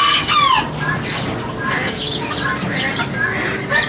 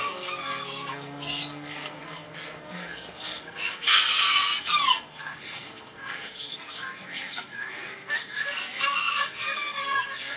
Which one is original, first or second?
first